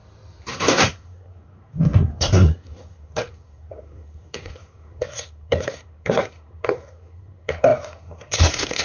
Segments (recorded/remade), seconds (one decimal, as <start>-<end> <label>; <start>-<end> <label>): 0.0-0.5 recorded; 0.5-8.8 remade